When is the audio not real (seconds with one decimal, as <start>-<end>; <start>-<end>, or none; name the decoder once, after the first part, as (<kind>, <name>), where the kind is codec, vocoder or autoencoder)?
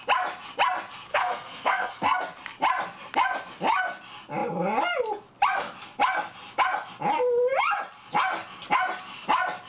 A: 1.1-2.2 (codec, SNAC)